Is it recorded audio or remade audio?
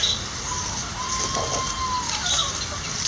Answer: recorded